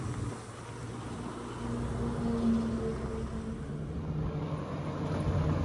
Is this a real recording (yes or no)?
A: yes